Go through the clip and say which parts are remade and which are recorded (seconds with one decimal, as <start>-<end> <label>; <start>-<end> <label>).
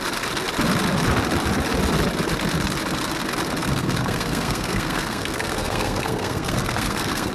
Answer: 0.0-3.6 recorded; 3.6-7.3 remade